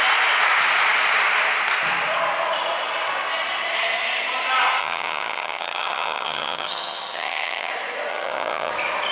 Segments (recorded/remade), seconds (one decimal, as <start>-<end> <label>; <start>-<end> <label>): 0.0-4.8 recorded; 4.8-7.7 remade; 7.7-8.1 recorded; 8.1-8.7 remade; 8.7-9.1 recorded

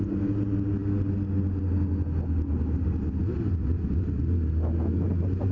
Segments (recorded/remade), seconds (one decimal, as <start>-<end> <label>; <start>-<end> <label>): 0.0-5.5 recorded

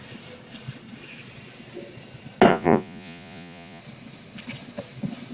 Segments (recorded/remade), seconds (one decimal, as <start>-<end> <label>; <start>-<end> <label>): 0.0-2.5 recorded; 2.5-3.8 remade; 3.8-5.3 recorded

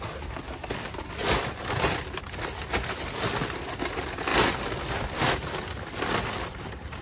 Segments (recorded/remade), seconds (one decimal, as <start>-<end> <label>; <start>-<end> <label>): 0.0-7.0 recorded

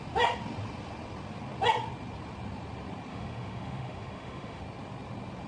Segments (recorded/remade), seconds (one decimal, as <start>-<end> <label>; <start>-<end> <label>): 0.0-3.1 recorded; 3.1-4.6 remade; 4.6-5.5 recorded